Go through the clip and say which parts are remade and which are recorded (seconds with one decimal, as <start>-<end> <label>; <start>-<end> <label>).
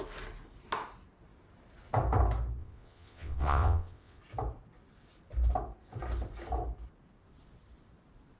0.0-2.6 recorded; 2.6-4.2 remade; 4.2-8.4 recorded